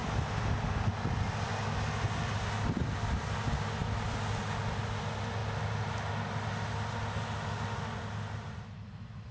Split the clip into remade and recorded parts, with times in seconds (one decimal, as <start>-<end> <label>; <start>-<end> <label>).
0.0-9.3 recorded